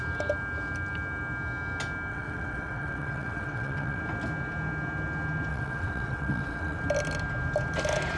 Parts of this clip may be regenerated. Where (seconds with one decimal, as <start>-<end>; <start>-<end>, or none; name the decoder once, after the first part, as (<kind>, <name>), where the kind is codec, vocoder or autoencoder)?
2.1-4.0 (vocoder, WaveNeXt); 5.5-6.8